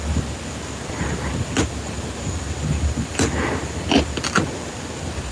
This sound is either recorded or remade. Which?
recorded